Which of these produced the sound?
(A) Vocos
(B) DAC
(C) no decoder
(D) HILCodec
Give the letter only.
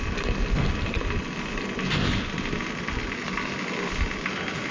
C